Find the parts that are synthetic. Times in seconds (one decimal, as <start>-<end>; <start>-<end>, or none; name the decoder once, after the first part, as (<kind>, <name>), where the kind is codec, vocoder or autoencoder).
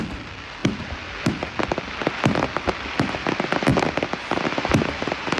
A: none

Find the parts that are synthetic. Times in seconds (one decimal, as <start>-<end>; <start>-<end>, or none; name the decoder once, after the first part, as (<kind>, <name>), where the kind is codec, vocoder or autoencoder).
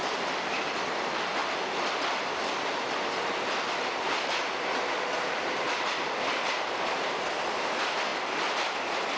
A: none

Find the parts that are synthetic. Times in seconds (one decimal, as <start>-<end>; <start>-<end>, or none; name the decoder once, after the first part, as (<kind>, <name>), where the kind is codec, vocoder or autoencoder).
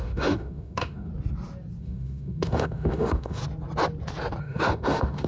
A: 0.0-1.1 (autoencoder, DAC-VAE); 1.8-3.4; 4.4-5.3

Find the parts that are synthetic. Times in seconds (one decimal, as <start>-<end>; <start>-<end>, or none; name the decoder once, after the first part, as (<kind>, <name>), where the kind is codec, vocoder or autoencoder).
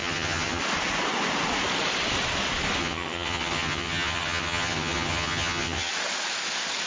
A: 0.0-0.6 (vocoder, HiFi-GAN); 2.8-5.9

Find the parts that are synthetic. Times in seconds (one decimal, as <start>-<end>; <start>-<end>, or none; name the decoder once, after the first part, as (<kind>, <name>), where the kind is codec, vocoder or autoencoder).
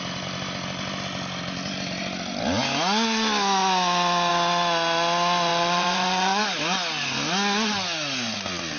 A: 5.5-6.4 (vocoder, Vocos)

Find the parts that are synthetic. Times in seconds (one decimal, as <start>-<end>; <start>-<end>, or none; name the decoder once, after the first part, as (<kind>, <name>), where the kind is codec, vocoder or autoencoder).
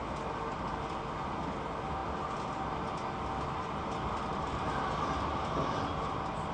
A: none